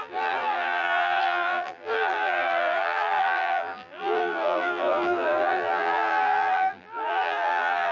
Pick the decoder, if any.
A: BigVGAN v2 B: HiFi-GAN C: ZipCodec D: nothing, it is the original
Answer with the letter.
A